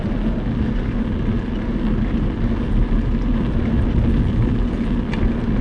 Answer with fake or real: real